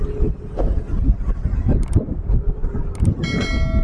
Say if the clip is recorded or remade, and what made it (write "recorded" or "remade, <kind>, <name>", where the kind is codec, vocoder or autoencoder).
recorded